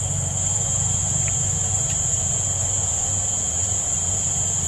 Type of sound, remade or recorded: remade